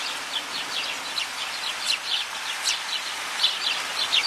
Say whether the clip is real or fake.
real